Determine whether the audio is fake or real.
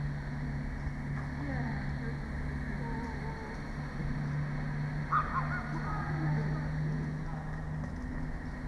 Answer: real